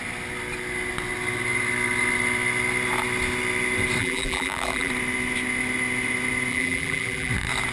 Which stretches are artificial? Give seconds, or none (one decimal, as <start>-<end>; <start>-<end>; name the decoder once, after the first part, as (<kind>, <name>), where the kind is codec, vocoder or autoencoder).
4.0-4.9 (vocoder, BigVGAN v2); 6.5-7.3